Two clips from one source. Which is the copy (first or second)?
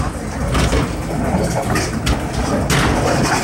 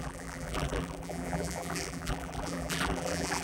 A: second